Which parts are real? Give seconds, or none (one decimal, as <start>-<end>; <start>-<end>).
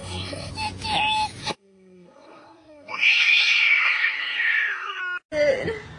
0.5-1.4; 5.0-6.0